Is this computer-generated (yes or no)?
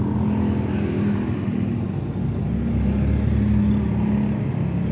no